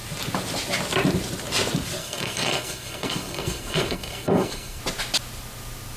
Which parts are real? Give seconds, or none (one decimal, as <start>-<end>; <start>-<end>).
0.0-2.0; 4.8-6.0